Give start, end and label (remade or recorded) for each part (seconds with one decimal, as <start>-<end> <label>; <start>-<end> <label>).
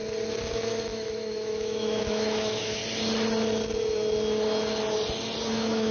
0.0-0.5 recorded; 0.5-2.8 remade; 2.8-5.5 recorded; 5.5-5.9 remade